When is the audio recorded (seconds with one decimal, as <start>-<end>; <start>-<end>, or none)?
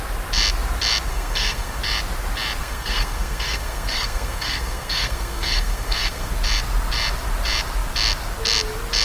0.0-1.1; 1.8-2.6; 6.3-9.0